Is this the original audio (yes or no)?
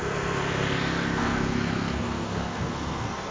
no